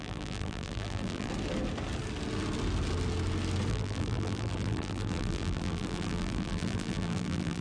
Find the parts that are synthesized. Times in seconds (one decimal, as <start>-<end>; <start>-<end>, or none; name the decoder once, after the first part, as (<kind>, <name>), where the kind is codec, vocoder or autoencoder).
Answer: 0.0-1.3 (vocoder, BigVGAN v2); 3.7-7.6